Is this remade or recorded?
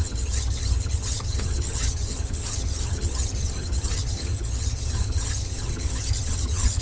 remade